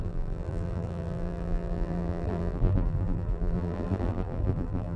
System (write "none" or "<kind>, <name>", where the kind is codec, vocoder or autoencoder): vocoder, BigVGAN v2